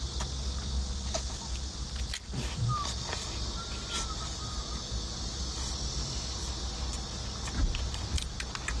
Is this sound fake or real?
real